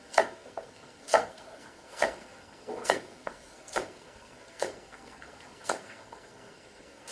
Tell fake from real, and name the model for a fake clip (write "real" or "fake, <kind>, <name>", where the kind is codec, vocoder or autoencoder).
fake, codec, SNAC